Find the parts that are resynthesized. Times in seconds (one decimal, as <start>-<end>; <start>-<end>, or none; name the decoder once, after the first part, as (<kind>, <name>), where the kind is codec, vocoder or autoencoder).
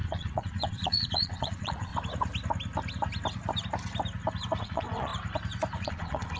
0.0-1.9 (vocoder, Vocos); 4.6-5.1; 5.8-6.4